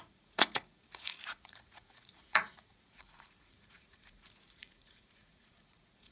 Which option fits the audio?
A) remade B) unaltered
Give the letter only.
A